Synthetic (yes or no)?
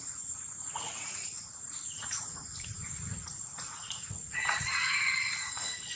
yes